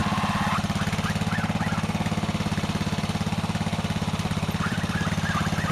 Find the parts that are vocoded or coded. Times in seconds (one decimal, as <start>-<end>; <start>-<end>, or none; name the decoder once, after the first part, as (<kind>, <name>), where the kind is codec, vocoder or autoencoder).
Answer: 3.7-5.1 (vocoder, BigVGAN v2)